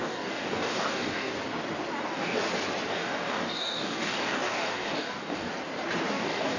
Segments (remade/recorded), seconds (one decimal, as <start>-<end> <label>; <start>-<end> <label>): 0.0-1.3 remade; 1.3-2.0 recorded; 2.0-2.4 remade; 2.4-2.9 recorded; 2.9-5.5 remade; 5.5-6.1 recorded; 6.1-6.6 remade